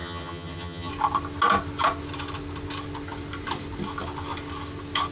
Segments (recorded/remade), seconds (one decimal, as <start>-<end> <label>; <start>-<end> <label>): 0.0-0.9 remade; 0.9-5.1 recorded